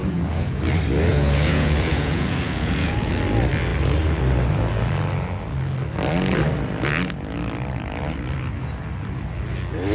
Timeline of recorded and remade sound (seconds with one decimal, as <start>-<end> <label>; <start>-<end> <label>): 0.0-0.6 remade; 0.6-1.1 recorded; 1.1-3.1 remade; 3.1-9.9 recorded

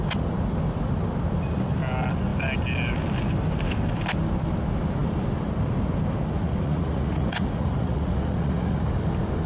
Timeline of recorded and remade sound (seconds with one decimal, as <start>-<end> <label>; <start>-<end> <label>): 0.0-6.4 recorded; 6.4-8.9 remade; 8.9-9.5 recorded

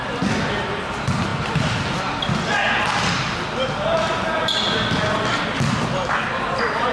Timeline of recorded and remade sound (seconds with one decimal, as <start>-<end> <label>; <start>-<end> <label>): 0.0-6.9 recorded

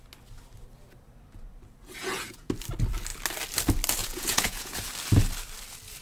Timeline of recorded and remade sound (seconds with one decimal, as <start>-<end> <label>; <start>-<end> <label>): 0.0-2.0 recorded; 2.0-2.5 remade; 2.5-4.0 recorded; 4.0-4.9 remade; 4.9-6.0 recorded

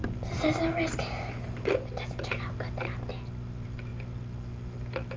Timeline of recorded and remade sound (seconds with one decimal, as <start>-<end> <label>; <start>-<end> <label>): 0.0-5.2 recorded

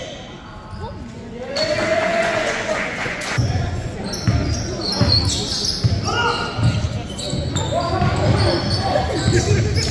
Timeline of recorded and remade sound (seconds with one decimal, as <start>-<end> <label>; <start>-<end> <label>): 0.0-1.9 recorded; 1.9-4.1 remade; 4.1-9.9 recorded

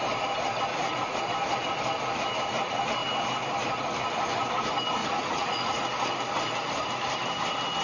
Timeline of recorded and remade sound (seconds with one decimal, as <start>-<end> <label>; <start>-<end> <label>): 0.0-0.7 recorded; 0.7-1.2 remade; 1.2-5.0 recorded; 5.0-5.8 remade; 5.8-7.8 recorded